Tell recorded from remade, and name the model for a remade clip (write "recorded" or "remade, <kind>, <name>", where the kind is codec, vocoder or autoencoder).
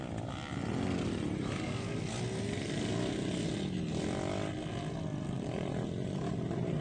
recorded